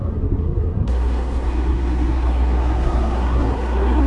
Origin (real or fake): fake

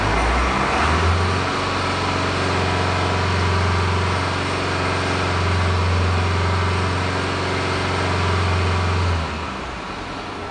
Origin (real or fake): real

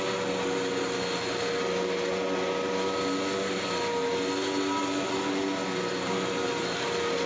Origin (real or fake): real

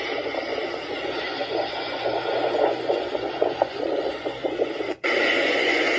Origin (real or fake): fake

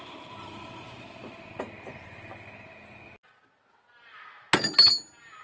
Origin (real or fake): real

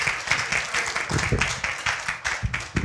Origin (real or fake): real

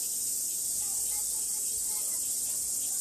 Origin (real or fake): fake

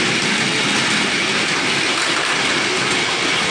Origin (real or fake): real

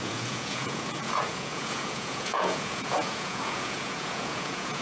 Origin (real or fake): fake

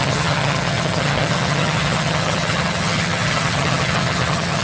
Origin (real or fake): fake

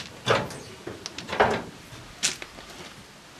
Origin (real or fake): real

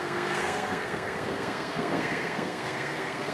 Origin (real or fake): fake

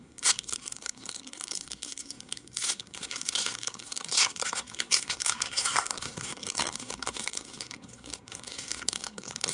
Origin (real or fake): fake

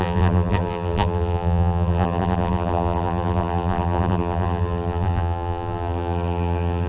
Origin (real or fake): fake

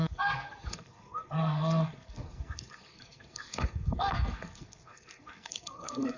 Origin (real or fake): fake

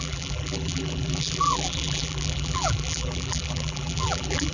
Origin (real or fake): fake